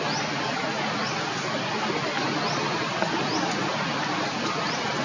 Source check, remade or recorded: recorded